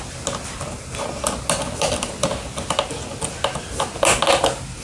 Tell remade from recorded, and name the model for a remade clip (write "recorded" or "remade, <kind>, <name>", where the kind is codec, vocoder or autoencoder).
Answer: recorded